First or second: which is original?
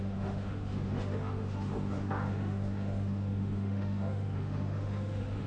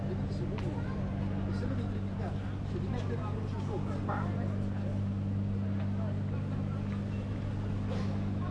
second